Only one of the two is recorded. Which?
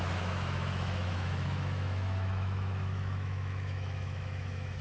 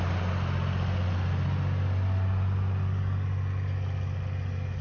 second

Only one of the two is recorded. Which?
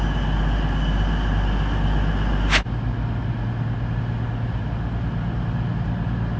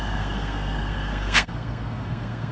first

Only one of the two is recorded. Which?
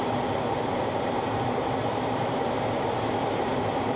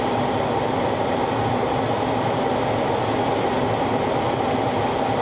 second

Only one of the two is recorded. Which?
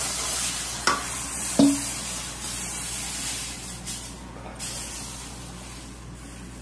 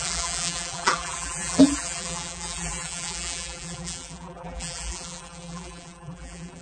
first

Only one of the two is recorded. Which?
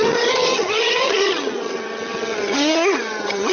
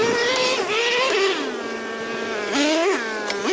second